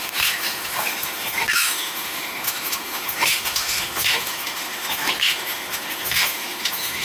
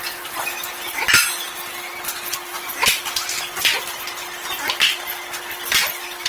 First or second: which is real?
second